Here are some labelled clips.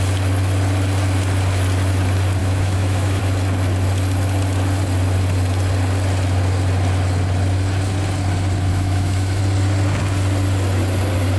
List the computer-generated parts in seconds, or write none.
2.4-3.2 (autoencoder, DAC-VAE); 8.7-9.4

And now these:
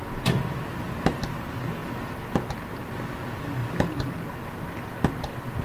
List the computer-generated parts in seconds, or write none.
3.6-4.2 (vocoder, BigVGAN v2)

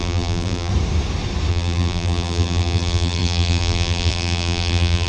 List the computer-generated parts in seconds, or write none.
0.0-0.7 (vocoder, BigVGAN v2); 1.5-5.1